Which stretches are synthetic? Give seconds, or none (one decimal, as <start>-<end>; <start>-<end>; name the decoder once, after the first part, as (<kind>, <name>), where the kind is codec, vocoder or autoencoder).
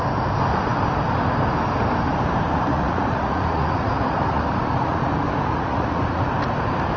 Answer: 2.7-5.1 (vocoder, Vocos); 5.5-6.2